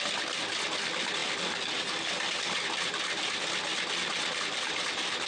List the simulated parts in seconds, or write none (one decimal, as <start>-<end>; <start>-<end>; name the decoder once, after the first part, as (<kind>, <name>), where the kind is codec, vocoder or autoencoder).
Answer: none